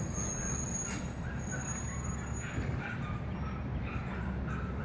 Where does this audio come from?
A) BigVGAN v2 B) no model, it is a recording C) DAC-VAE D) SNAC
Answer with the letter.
B